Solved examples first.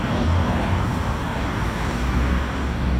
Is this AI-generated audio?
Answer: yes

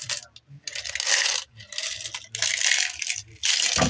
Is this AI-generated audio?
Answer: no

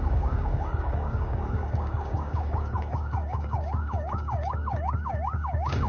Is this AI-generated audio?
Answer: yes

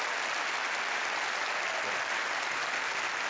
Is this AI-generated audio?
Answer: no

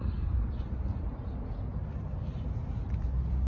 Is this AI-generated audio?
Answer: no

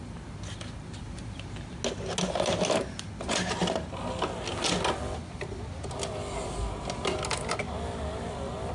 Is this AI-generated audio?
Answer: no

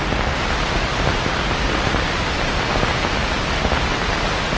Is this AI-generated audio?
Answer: no